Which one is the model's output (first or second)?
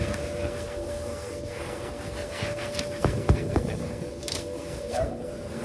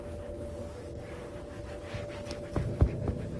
first